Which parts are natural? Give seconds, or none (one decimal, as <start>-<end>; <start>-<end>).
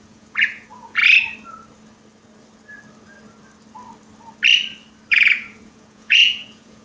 1.0-5.1